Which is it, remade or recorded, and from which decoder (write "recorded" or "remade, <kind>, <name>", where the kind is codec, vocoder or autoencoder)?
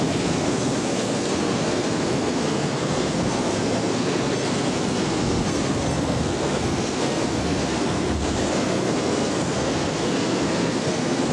remade, codec, SNAC